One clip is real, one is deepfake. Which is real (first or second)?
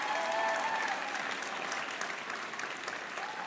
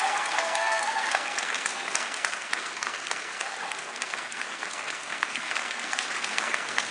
first